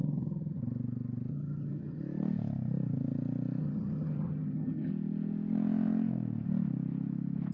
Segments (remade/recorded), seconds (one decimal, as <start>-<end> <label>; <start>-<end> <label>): 0.0-0.6 remade; 0.6-1.3 recorded; 1.3-2.0 remade; 2.0-3.6 recorded; 3.6-4.9 remade; 4.9-7.5 recorded